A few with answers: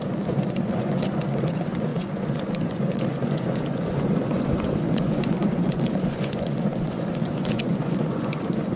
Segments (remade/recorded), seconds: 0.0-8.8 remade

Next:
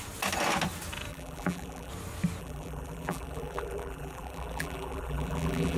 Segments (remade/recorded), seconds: 0.0-1.1 recorded; 1.1-1.9 remade; 1.9-2.4 recorded; 2.4-5.8 remade